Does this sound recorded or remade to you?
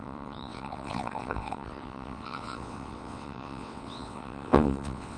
remade